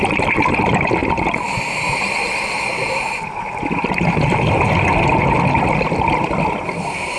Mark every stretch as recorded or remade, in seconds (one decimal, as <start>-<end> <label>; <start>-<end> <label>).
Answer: 0.0-7.2 recorded

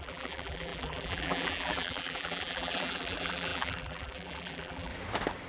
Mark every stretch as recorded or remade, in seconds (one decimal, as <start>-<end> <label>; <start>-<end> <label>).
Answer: 0.0-4.9 remade; 4.9-5.5 recorded